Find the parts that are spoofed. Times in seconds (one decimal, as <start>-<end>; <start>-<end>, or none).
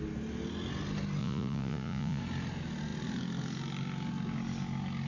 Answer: 1.2-2.2